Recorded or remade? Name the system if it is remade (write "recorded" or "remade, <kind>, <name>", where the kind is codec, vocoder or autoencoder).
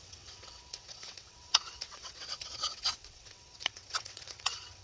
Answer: remade, vocoder, WaveNeXt